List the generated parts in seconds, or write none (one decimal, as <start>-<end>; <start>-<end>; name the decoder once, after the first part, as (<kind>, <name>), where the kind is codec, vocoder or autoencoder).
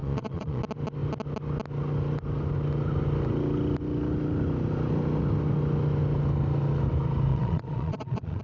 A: 0.0-0.6 (vocoder, Vocos); 7.3-8.4